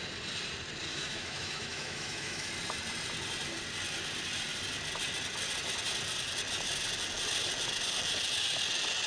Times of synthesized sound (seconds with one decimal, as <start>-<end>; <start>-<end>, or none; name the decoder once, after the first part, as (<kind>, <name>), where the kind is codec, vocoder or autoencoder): 0.9-2.5 (autoencoder, DAC-VAE)